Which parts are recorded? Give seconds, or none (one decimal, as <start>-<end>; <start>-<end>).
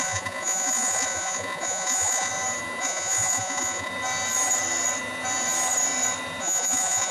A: 2.3-2.8; 3.9-6.4